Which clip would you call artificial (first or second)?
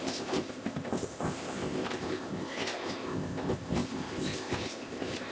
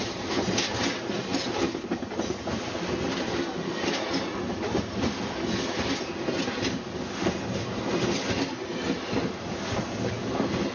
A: first